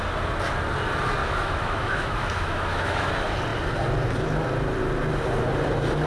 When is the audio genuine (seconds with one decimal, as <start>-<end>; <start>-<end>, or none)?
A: 0.0-1.2; 3.1-6.1